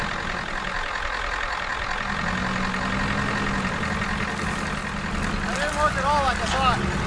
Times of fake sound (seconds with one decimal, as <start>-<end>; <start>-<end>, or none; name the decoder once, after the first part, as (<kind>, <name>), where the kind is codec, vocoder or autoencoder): none